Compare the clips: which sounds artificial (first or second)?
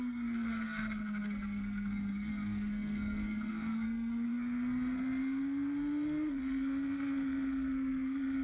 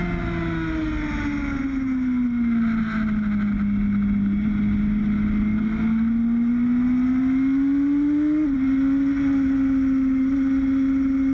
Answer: first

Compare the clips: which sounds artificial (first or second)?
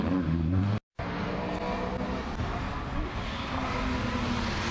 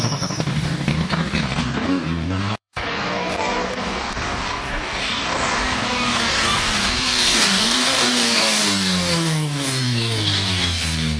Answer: second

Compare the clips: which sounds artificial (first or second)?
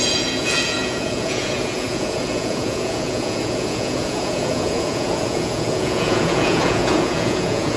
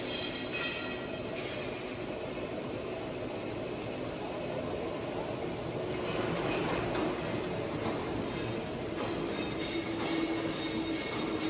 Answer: first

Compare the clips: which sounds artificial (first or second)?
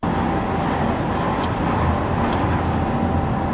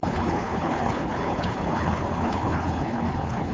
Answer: second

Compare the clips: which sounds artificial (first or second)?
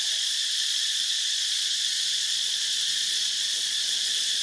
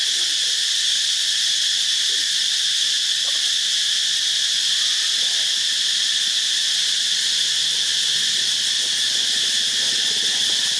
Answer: first